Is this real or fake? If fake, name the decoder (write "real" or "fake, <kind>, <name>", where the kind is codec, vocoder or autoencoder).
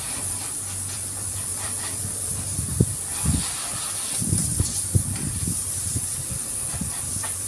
fake, vocoder, BigVGAN v2